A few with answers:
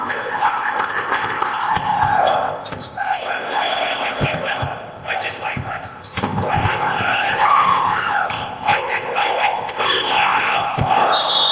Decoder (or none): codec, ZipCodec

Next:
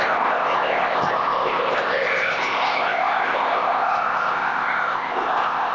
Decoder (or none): codec, ZipCodec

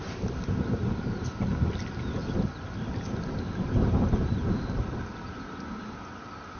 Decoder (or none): none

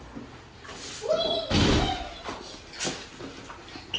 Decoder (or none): none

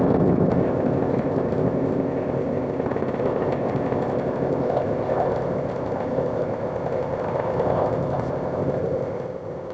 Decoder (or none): codec, ZipCodec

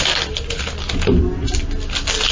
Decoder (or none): none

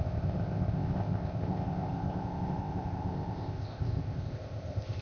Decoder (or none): codec, ZipCodec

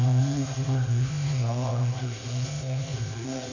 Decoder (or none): codec, ZipCodec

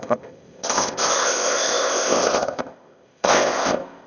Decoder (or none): codec, ZipCodec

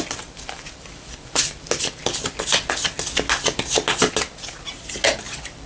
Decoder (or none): none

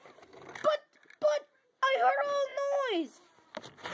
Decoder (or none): none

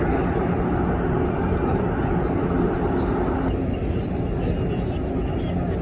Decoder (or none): none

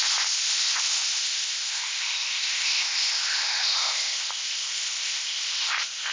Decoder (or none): codec, ZipCodec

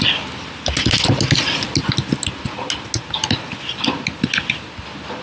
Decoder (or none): none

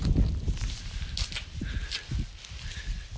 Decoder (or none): none